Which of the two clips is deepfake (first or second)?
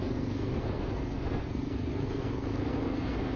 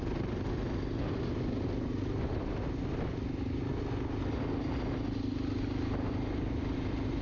first